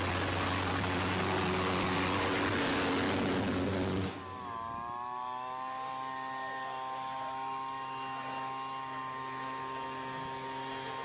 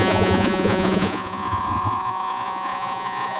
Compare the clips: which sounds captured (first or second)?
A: first